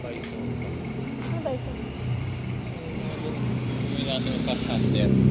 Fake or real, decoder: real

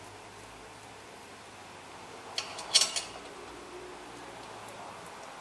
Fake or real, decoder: real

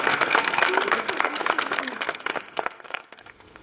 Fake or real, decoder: fake, codec, SNAC